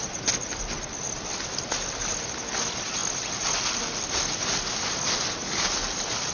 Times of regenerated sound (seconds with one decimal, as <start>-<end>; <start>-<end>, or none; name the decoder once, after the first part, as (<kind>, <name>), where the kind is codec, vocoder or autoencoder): none